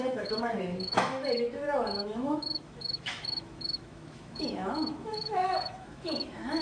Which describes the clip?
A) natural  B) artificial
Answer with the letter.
B